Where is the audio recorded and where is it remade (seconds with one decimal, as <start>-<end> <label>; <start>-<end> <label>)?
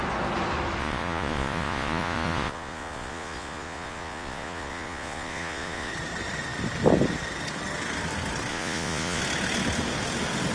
0.0-0.8 recorded; 0.8-5.9 remade; 5.9-8.5 recorded; 8.5-9.2 remade; 9.2-10.5 recorded